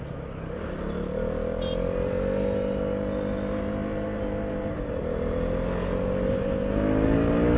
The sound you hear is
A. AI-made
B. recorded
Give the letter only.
B